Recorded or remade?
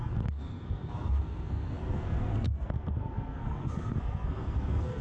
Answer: remade